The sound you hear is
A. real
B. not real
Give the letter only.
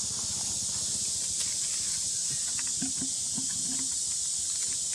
A